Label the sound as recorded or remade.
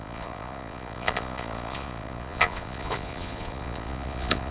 remade